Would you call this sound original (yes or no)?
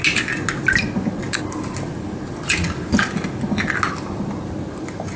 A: yes